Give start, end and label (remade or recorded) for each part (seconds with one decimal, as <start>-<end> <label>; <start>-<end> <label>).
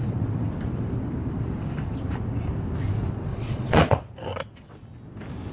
0.0-3.3 recorded; 3.3-4.1 remade; 4.1-5.5 recorded